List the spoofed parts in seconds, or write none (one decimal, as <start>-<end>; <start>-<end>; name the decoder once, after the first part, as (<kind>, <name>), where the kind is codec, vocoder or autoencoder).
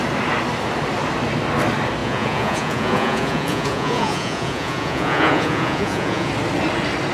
2.0-6.3 (vocoder, Vocos)